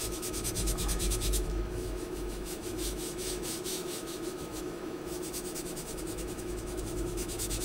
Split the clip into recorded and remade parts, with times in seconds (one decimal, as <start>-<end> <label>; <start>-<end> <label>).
0.0-7.6 remade